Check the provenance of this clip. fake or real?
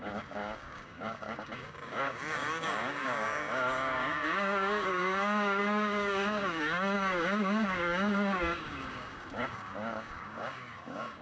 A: fake